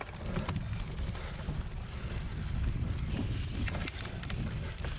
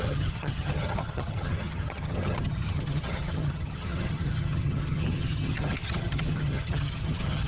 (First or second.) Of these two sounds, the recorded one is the first